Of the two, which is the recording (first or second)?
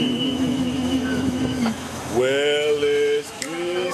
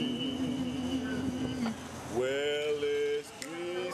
second